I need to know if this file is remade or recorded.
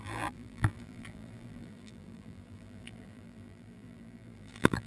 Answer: remade